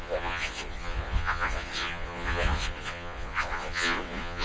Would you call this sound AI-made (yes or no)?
yes